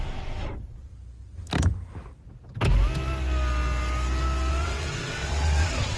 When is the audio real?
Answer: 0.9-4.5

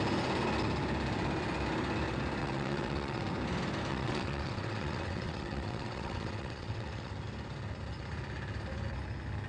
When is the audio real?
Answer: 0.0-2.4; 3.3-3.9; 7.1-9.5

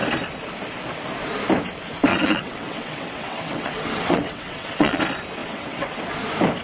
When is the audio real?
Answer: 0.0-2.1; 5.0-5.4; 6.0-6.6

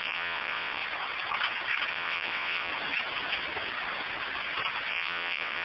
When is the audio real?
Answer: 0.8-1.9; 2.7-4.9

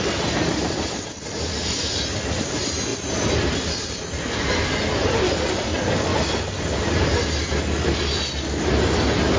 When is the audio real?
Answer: 0.0-9.4